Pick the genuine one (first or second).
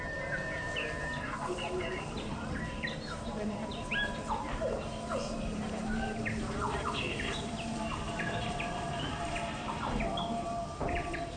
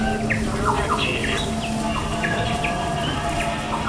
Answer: second